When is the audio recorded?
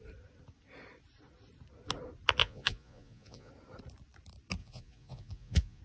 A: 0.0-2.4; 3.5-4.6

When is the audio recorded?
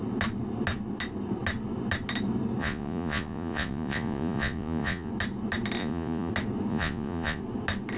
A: 0.0-2.6; 5.1-5.8; 6.3-6.7; 7.4-8.0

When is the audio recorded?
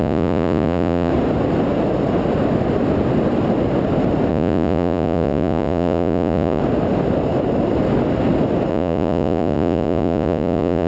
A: 1.1-4.3; 6.6-8.7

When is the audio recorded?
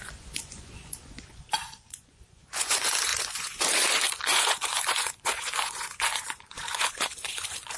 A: none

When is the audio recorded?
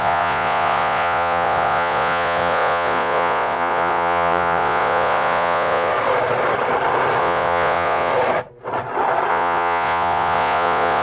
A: 5.9-7.2; 8.1-9.3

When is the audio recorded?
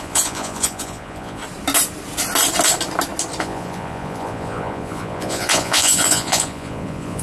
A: 1.4-3.4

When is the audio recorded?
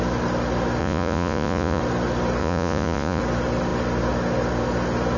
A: 0.0-0.8; 1.8-2.4; 3.2-5.2